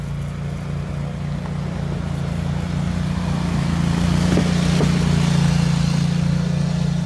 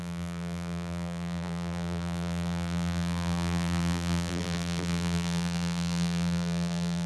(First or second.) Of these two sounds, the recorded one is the first